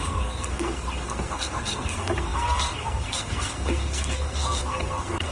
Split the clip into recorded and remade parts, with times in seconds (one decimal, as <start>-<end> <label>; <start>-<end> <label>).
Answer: 0.0-5.3 remade

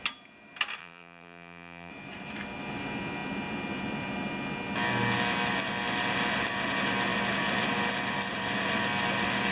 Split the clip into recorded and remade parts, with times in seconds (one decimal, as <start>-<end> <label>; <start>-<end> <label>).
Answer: 0.0-0.8 recorded; 0.8-1.9 remade; 1.9-9.5 recorded

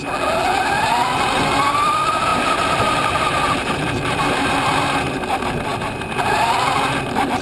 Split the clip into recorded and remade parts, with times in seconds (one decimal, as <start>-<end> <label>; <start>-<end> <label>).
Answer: 0.0-2.3 recorded; 2.3-4.5 remade; 4.5-7.4 recorded

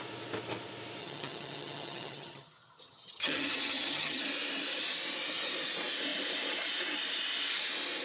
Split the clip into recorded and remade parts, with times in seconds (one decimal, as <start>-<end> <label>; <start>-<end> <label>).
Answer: 0.0-1.0 recorded; 1.0-4.2 remade; 4.2-8.0 recorded

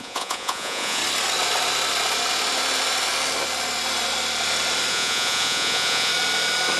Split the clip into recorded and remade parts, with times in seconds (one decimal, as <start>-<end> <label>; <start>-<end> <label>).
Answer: 0.0-1.0 remade; 1.0-4.9 recorded; 4.9-6.1 remade; 6.1-6.8 recorded

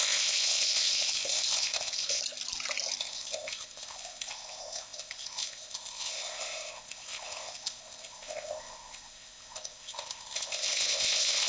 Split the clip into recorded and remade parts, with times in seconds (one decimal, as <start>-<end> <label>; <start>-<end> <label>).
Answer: 0.0-2.2 remade; 2.2-3.0 recorded; 3.0-11.5 remade

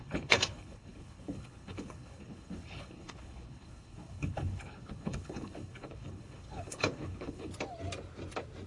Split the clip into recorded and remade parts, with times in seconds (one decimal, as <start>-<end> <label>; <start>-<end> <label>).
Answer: 0.0-7.5 remade; 7.5-8.7 recorded